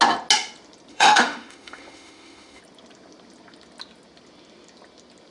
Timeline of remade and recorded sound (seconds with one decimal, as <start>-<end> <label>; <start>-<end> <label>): 0.0-0.9 recorded; 0.9-2.6 remade; 2.6-5.3 recorded